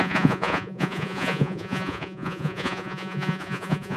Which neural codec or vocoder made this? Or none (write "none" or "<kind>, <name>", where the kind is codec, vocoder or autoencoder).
vocoder, Vocos